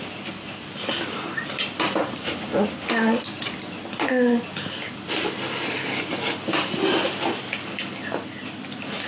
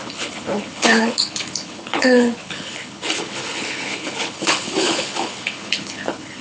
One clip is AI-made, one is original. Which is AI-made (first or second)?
second